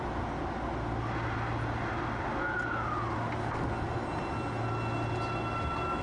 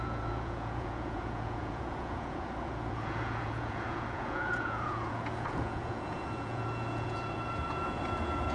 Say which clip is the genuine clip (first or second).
first